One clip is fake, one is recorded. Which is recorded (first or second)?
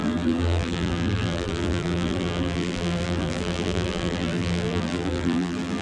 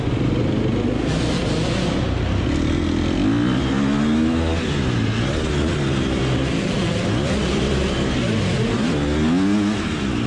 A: second